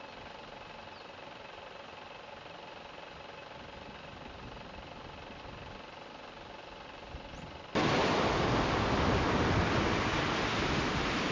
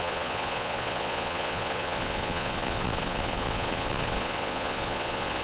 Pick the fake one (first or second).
second